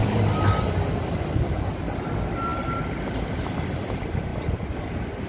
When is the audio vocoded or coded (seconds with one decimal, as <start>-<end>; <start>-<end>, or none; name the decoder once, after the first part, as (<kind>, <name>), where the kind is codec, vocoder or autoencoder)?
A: none